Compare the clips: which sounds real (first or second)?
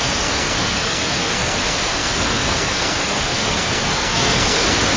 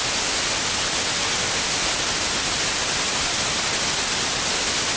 second